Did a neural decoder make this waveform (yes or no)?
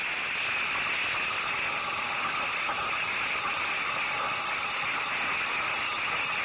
no